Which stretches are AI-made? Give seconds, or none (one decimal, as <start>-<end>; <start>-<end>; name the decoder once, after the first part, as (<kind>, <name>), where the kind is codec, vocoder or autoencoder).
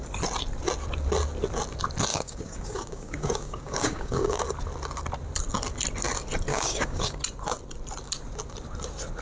2.1-4.4 (codec, DAC); 6.5-7.2